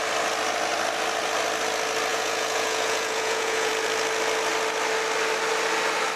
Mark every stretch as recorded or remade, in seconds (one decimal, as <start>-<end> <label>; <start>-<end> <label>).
0.0-2.1 recorded; 2.1-3.7 remade; 3.7-6.2 recorded